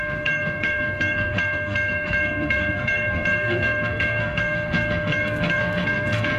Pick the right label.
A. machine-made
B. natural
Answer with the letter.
A